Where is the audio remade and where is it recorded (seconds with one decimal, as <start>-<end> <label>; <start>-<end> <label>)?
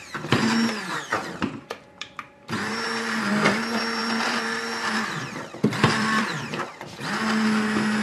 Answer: 0.0-0.9 recorded; 0.9-3.6 remade; 3.6-4.0 recorded; 4.0-7.2 remade; 7.2-8.0 recorded